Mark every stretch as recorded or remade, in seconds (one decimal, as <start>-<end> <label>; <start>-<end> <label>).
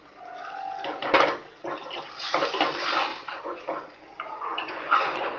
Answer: 0.0-3.1 recorded; 3.1-5.4 remade